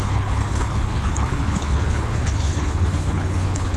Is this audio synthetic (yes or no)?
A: yes